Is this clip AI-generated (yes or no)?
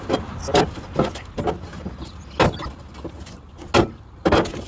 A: no